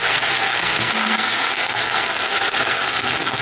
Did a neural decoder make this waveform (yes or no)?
yes